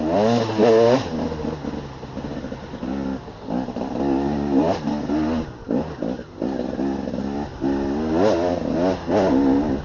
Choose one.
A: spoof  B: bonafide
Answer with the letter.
B